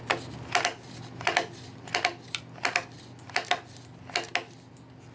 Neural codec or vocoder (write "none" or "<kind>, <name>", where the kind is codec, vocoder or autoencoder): none